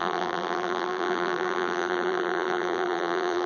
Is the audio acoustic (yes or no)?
no